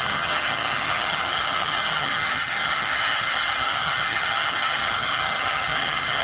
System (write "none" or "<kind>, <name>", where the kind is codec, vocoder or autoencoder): vocoder, HiFi-GAN